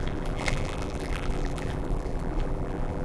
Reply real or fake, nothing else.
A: fake